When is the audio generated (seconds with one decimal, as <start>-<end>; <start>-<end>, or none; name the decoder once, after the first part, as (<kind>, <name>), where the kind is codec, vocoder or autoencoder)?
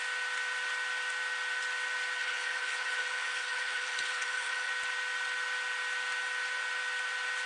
2.2-4.7 (codec, HILCodec)